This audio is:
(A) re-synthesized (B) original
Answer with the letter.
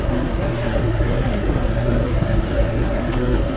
A